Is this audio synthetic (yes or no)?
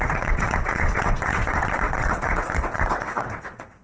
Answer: yes